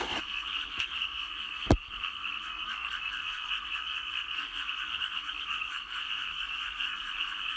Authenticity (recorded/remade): remade